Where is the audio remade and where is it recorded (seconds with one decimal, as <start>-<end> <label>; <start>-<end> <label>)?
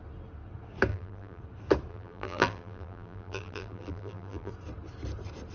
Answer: 0.0-0.9 recorded; 0.9-1.4 remade; 1.4-1.9 recorded; 1.9-4.5 remade; 4.5-5.5 recorded